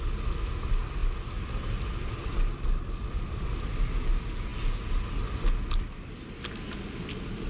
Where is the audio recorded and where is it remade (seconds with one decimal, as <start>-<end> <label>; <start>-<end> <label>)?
0.0-7.5 recorded